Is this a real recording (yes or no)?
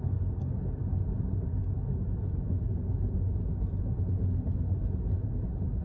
yes